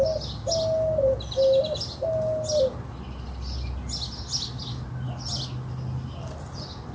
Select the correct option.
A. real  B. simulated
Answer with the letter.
A